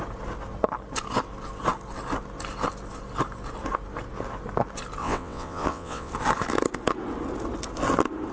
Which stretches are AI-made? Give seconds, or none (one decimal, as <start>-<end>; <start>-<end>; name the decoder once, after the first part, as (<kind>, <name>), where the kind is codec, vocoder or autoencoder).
5.0-6.1 (vocoder, WaveNeXt)